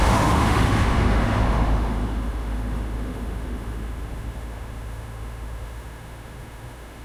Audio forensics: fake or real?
fake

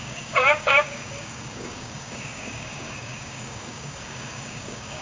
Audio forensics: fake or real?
fake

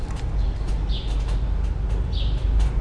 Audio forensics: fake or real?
real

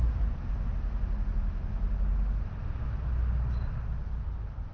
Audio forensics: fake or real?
real